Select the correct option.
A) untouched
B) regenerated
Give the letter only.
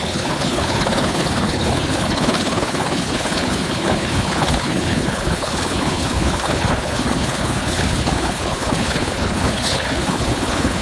B